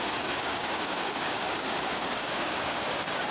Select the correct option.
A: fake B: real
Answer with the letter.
A